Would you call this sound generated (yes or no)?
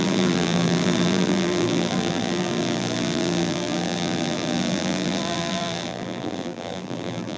yes